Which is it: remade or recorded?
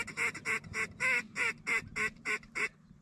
recorded